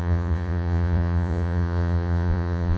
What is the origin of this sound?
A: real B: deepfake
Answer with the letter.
B